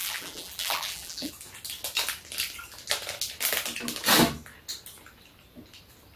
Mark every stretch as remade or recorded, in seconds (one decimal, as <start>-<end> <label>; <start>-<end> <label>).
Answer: 0.0-1.3 remade; 1.3-6.2 recorded